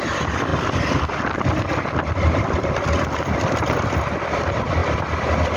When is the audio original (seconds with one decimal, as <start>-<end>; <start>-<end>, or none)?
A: 0.0-5.6